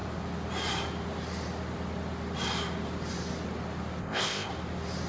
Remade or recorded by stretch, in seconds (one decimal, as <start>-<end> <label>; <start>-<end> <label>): 0.0-4.0 recorded; 4.0-4.5 remade; 4.5-5.1 recorded